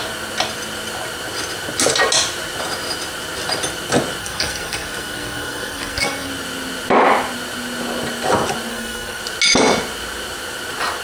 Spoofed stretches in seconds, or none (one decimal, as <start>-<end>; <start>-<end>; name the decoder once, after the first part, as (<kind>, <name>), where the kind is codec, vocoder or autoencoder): 4.2-6.3 (codec, SNAC); 8.7-9.2